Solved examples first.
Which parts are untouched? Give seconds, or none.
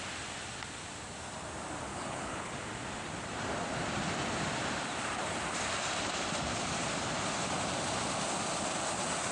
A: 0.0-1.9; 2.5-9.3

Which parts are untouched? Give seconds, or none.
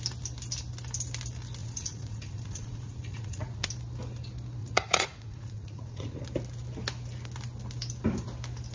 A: 0.0-1.6; 3.7-4.6; 6.2-8.7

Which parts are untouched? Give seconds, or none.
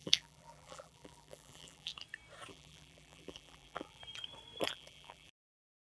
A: 1.9-2.5; 4.0-4.7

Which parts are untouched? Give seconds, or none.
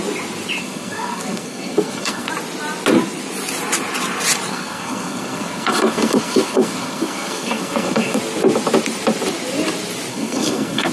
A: 0.0-0.6; 2.3-4.5; 8.2-10.1